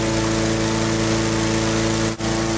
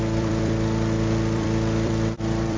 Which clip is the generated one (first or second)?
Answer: second